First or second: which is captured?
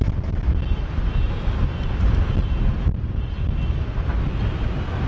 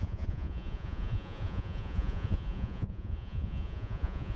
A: first